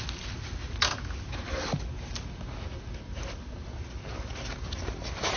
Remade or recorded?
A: recorded